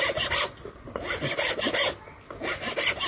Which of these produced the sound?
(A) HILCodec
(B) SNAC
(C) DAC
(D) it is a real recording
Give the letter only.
D